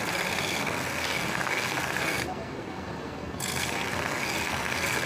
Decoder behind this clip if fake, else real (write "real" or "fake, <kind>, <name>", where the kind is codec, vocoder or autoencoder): fake, codec, SNAC